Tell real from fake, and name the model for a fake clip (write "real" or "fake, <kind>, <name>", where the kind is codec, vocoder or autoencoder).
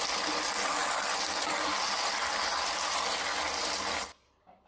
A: real